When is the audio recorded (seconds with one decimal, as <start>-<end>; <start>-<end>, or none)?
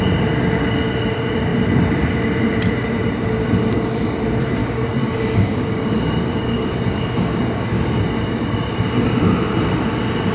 0.0-4.6; 8.0-10.3